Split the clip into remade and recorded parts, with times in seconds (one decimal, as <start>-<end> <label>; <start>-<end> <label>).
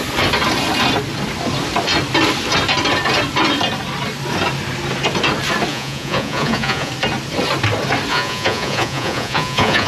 0.0-5.7 recorded; 5.7-6.9 remade; 6.9-8.1 recorded; 8.1-9.9 remade